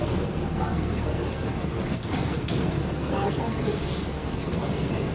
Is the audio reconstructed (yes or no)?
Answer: yes